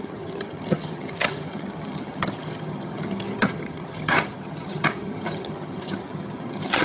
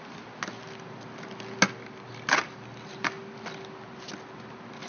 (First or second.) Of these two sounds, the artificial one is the first